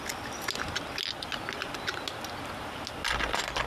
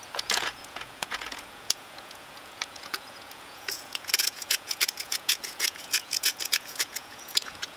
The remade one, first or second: second